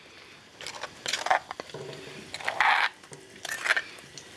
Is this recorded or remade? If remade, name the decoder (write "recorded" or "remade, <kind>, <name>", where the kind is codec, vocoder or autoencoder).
recorded